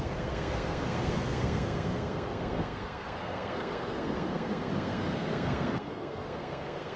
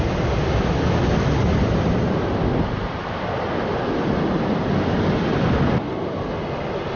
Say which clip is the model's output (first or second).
first